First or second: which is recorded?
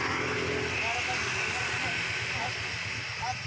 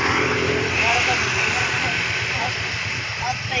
first